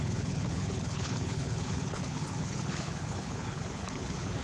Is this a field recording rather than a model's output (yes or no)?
no